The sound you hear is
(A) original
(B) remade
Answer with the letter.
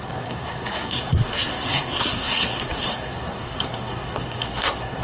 B